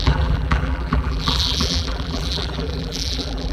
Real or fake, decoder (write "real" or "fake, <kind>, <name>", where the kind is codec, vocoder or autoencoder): fake, vocoder, BigVGAN v2